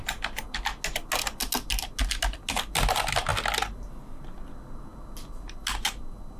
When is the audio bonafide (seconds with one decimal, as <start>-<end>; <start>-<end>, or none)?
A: 0.0-6.4